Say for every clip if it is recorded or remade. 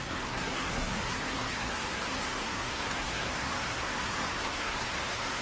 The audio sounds remade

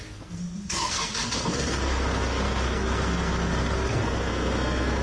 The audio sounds remade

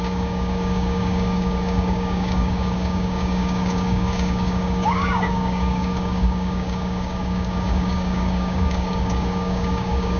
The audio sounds remade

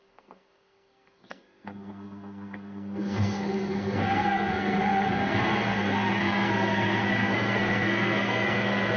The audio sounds remade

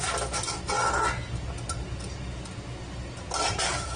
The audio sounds recorded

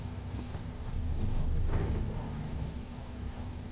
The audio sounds remade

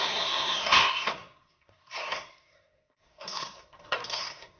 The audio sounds remade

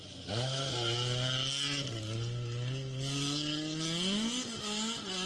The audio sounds recorded